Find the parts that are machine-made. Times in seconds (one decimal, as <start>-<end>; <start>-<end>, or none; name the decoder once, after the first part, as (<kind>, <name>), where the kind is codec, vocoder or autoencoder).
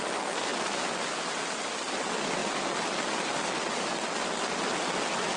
none